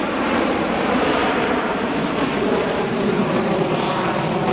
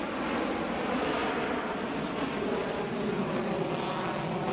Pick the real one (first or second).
second